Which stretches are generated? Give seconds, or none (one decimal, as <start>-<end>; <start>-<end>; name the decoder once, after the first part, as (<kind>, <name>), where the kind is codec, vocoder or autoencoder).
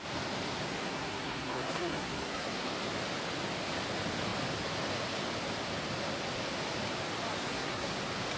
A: 0.8-2.7 (codec, SNAC); 7.4-7.9